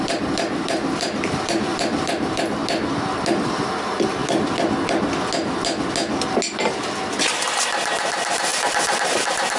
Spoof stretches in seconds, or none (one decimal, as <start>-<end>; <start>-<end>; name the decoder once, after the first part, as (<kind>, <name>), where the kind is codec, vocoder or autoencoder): 0.0-2.6 (vocoder, BigVGAN v2); 3.3-4.2; 7.6-9.6